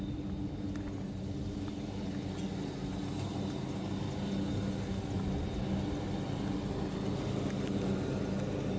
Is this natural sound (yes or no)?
yes